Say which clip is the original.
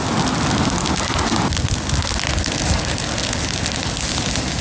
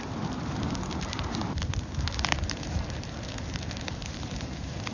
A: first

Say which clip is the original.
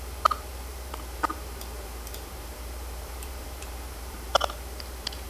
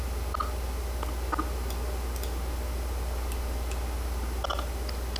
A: second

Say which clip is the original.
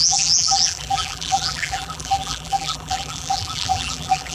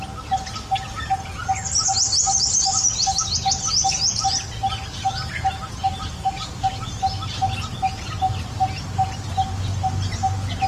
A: second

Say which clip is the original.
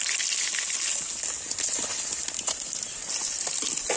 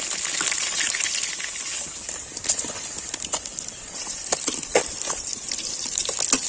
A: first